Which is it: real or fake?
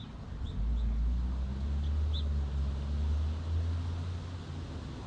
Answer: real